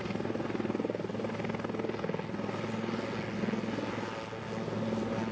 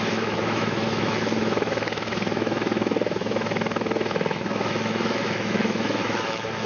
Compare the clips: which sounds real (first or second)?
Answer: first